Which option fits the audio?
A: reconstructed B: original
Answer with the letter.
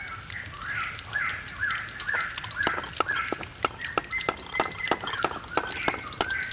B